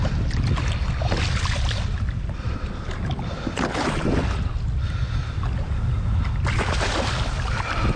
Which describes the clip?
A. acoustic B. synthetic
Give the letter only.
A